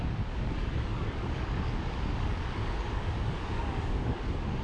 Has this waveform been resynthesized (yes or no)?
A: yes